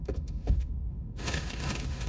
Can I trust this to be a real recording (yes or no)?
no